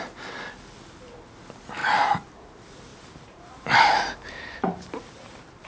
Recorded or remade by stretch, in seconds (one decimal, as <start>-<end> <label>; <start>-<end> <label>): 0.0-2.9 recorded; 2.9-5.7 remade